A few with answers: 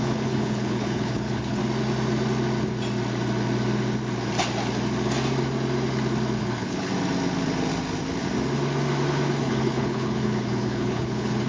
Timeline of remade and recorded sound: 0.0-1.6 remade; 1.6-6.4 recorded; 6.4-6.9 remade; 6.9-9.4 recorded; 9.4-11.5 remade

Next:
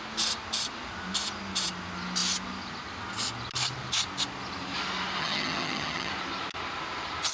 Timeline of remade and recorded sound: 0.0-5.2 recorded; 5.2-6.1 remade; 6.1-7.3 recorded

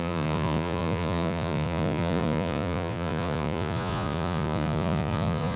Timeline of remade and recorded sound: 0.0-5.6 remade

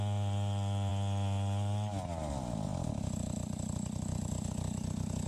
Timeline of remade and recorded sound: 0.0-5.3 recorded

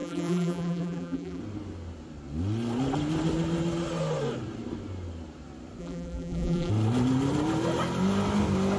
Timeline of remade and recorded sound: 0.0-1.4 remade; 1.4-5.8 recorded; 5.8-6.7 remade; 6.7-8.8 recorded

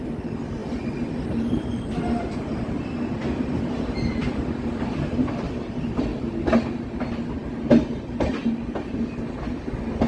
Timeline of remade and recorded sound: 0.0-10.1 recorded

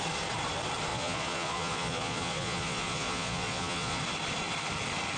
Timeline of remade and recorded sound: 0.0-0.9 recorded; 0.9-4.0 remade; 4.0-5.2 recorded